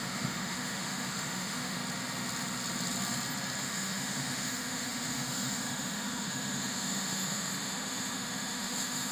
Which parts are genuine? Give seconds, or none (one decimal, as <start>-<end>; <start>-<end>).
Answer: 1.8-3.6